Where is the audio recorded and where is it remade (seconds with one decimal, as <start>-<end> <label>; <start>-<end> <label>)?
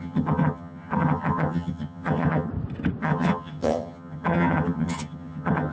0.0-2.5 remade; 2.5-3.0 recorded; 3.0-5.7 remade